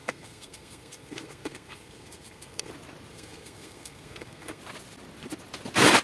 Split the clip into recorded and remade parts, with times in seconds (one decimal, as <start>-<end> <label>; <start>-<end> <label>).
0.0-2.7 remade; 2.7-3.1 recorded; 3.1-4.6 remade; 4.6-6.0 recorded